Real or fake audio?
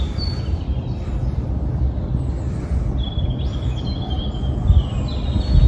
real